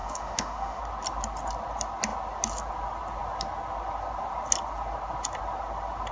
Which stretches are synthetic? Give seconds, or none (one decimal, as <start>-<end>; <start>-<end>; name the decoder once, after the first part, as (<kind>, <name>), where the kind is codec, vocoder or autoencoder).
0.0-0.8 (autoencoder, DAC-VAE)